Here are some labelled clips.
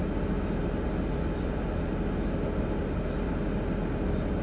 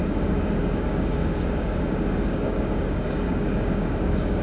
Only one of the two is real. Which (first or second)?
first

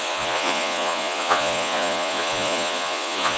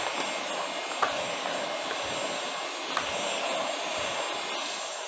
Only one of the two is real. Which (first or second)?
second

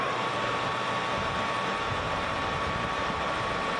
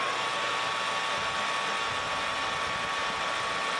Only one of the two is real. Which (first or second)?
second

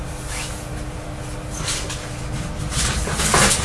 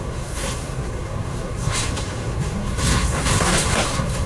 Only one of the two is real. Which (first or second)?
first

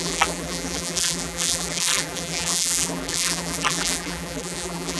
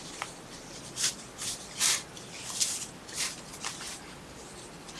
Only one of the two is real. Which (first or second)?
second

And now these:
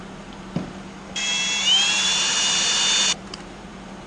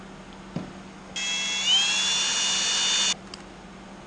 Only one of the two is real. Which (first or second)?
second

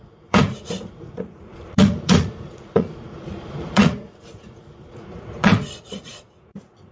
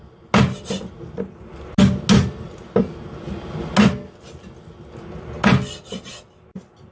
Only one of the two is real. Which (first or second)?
second